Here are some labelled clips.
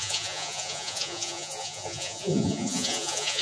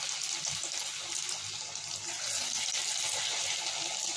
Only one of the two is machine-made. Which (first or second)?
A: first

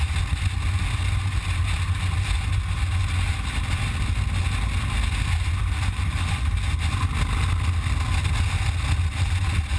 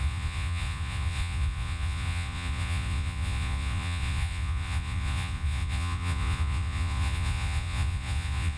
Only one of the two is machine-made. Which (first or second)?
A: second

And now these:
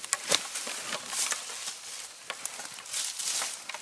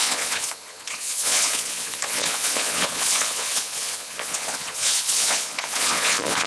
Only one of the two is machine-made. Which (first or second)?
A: second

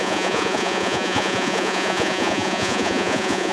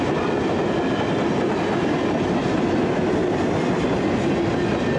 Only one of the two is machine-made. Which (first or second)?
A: first